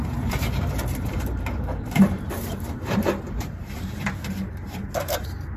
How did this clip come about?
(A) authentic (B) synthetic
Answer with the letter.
B